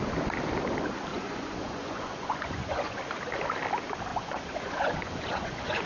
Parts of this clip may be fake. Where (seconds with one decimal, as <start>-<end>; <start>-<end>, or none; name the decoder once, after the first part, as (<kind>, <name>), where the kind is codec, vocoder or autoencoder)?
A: 1.1-3.0 (vocoder, Vocos); 4.1-5.9